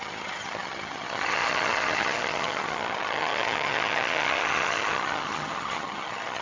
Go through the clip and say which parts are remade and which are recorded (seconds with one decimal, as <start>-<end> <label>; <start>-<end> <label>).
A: 0.0-6.4 remade